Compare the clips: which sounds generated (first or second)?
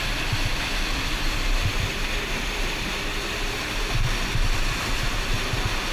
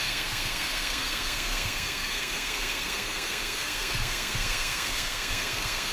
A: second